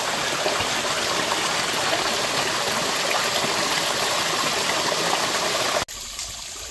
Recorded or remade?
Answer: recorded